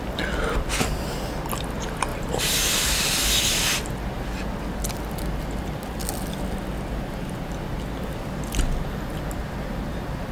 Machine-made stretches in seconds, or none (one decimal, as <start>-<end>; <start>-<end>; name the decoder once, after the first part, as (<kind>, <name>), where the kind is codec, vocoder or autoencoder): 2.1-3.4 (vocoder, BigVGAN v2)